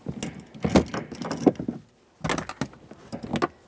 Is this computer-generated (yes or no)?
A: no